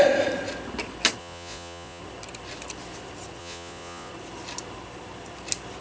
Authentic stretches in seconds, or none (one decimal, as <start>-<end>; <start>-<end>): 0.0-1.2; 2.0-3.4; 4.1-5.8